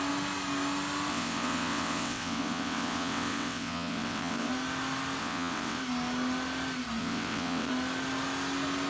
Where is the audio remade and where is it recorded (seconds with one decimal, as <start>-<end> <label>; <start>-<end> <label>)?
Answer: 0.0-1.1 recorded; 1.1-4.5 remade; 4.5-5.2 recorded; 5.2-5.8 remade; 5.8-7.0 recorded; 7.0-7.7 remade; 7.7-8.9 recorded